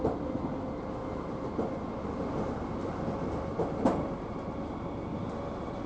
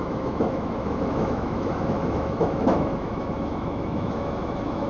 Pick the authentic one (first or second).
first